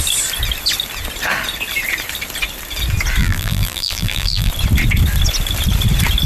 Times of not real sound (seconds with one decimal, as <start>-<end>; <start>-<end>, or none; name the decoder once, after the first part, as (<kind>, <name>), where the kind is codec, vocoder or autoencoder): 3.2-4.5 (vocoder, BigVGAN v2)